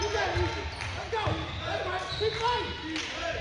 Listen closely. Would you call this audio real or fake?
real